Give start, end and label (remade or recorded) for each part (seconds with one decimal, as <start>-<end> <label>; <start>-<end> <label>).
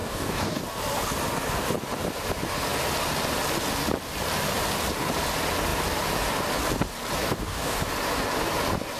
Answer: 0.0-0.6 remade; 0.6-7.2 recorded; 7.2-7.8 remade; 7.8-9.0 recorded